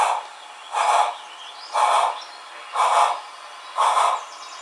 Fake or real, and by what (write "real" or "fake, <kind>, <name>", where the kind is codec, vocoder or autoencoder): real